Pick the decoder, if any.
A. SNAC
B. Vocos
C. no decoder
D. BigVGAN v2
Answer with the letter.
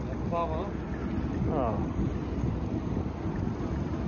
C